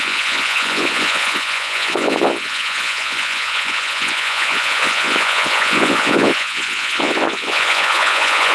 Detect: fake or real fake